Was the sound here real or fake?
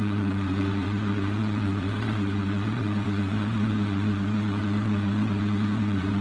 fake